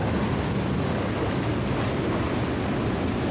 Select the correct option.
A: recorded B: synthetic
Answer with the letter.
A